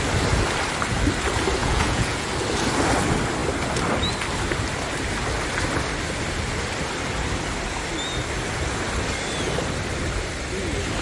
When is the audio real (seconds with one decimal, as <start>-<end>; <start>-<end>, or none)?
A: 0.0-1.6; 2.3-11.0